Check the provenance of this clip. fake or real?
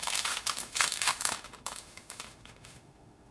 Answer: fake